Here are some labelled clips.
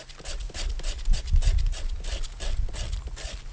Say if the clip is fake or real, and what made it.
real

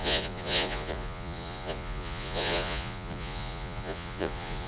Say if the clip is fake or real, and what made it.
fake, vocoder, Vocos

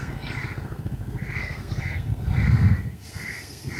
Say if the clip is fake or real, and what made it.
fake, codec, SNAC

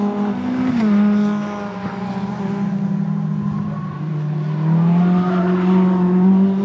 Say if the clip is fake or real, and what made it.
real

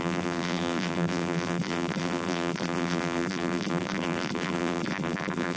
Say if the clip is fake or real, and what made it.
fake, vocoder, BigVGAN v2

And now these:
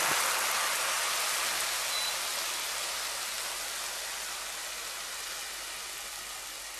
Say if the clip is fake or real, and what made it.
real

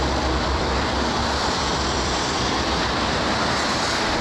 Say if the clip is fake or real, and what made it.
fake, vocoder, BigVGAN v2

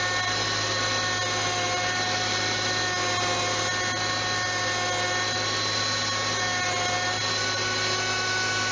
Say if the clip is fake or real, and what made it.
real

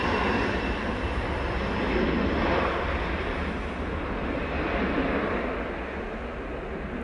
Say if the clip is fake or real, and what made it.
real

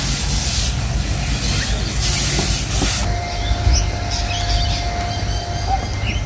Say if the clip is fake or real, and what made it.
real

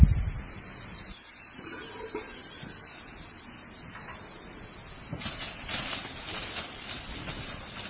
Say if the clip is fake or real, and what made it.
real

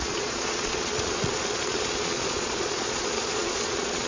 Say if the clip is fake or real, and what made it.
fake, vocoder, Vocos